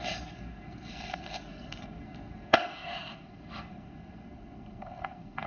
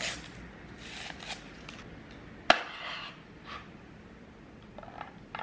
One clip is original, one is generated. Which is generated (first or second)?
first